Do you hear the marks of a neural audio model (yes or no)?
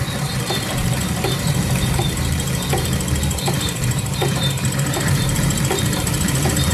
yes